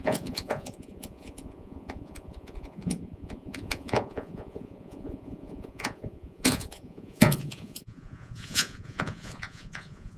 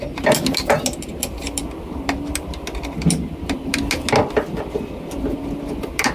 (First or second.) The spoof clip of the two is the first